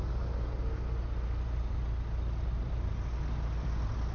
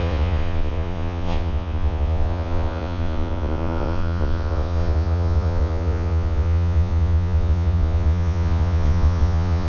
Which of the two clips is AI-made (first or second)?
second